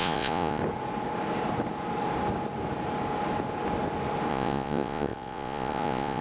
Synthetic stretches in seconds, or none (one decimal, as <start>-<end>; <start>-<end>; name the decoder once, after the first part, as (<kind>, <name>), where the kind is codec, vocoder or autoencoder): 0.0-0.6 (vocoder, Vocos); 4.3-6.2

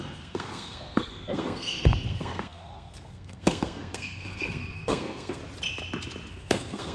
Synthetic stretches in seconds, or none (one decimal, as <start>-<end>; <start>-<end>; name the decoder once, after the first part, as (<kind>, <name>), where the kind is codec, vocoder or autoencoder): 0.0-5.4 (codec, SNAC); 6.3-6.9

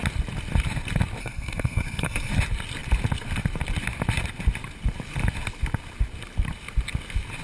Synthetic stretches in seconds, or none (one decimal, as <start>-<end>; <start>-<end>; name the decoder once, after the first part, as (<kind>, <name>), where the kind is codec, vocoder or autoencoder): 1.2-2.3 (codec, SNAC)

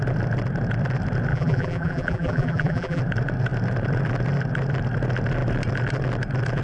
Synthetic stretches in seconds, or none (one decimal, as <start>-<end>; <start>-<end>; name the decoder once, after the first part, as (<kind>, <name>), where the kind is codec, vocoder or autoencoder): 1.3-3.0 (vocoder, BigVGAN v2)

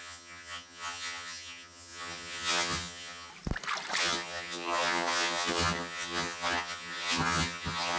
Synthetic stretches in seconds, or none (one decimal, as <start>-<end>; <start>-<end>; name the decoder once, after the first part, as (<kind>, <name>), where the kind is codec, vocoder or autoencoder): 0.0-3.3 (vocoder, HiFi-GAN); 4.0-8.0

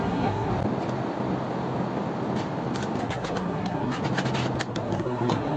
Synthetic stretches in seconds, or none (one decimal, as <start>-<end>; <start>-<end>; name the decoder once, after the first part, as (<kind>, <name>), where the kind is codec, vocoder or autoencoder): 0.0-0.5 (codec, SNAC); 3.0-4.0; 4.7-5.6

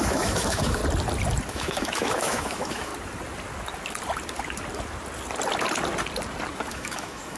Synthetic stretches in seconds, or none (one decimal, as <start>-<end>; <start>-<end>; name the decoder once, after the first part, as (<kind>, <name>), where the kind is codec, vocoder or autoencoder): 0.0-0.8 (autoencoder, DAC-VAE); 1.5-2.9; 6.7-7.4

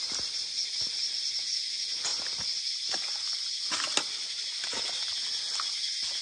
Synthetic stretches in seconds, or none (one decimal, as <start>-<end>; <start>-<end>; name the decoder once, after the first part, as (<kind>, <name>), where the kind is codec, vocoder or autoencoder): 2.1-2.7 (vocoder, BigVGAN v2)